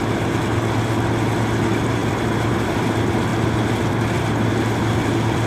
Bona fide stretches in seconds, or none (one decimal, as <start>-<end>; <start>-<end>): 3.3-3.9